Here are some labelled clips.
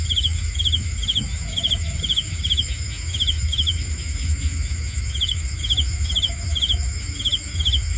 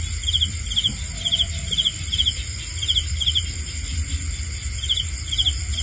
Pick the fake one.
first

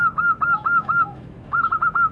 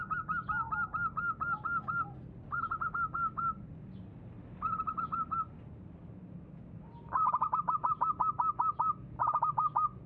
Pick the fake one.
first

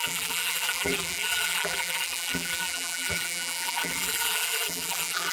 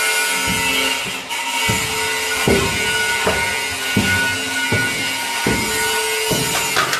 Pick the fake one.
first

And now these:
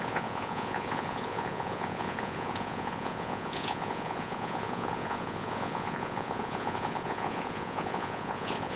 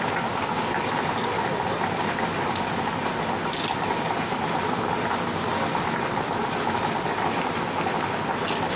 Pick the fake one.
first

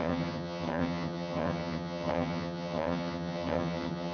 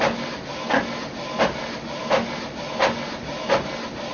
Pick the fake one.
first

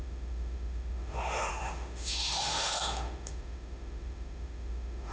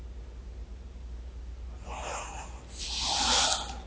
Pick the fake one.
first